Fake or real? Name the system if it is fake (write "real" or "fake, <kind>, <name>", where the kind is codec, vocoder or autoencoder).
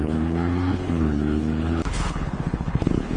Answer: fake, codec, HILCodec